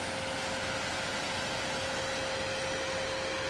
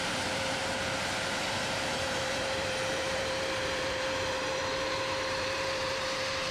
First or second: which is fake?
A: second